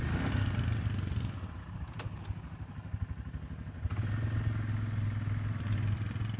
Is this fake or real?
real